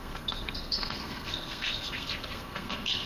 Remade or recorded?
remade